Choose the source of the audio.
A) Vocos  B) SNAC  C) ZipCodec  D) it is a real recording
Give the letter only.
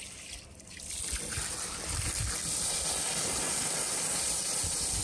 D